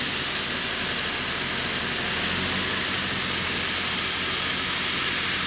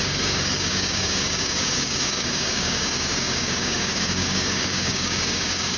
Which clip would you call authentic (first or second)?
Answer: first